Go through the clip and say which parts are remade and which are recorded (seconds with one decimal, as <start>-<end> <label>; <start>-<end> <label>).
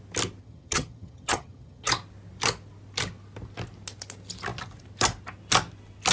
0.0-0.4 recorded; 0.4-1.9 remade; 1.9-6.1 recorded